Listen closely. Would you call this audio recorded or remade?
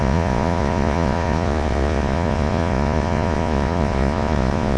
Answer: remade